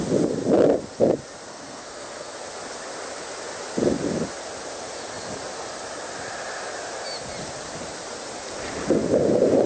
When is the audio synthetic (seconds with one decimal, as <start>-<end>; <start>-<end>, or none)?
1.5-2.3